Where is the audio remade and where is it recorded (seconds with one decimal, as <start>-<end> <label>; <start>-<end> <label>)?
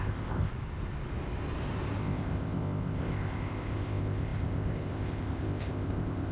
0.0-0.5 remade; 0.5-2.0 recorded; 2.0-6.3 remade